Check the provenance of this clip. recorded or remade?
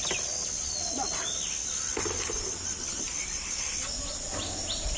recorded